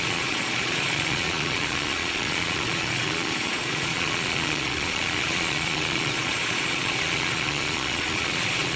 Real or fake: fake